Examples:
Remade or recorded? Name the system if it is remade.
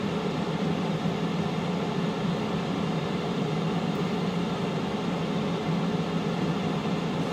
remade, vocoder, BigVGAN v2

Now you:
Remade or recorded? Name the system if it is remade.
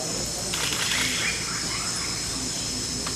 recorded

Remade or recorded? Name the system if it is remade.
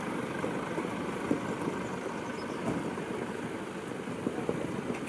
recorded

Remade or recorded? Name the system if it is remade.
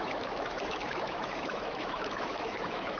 remade, autoencoder, DAC-VAE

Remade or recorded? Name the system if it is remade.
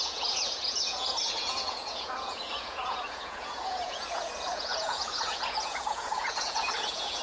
remade, vocoder, Vocos